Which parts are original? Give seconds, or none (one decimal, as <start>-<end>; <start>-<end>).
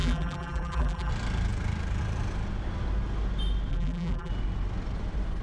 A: 1.1-3.7; 4.3-5.4